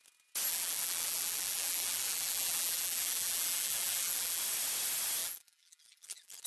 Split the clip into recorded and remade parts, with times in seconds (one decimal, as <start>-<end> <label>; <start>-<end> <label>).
0.0-0.5 recorded; 0.5-4.4 remade; 4.4-5.2 recorded; 5.2-6.5 remade